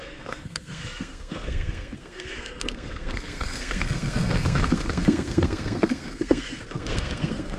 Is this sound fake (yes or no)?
yes